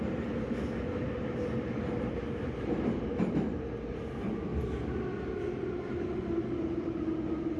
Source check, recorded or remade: recorded